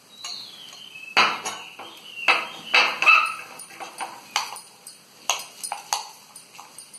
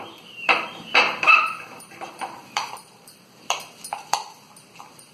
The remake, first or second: second